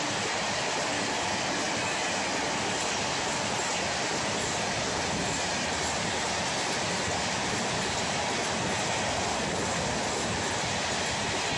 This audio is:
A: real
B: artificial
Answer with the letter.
A